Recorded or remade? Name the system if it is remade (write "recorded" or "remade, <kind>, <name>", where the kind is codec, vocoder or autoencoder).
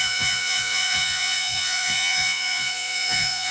remade, vocoder, Vocos